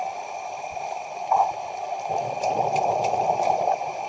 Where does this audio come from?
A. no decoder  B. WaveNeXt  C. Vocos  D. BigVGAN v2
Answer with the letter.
A